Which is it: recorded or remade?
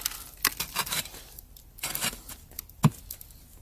recorded